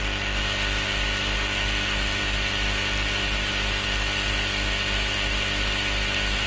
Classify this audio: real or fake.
real